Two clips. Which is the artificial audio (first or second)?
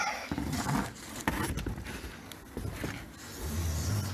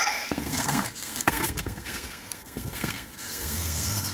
second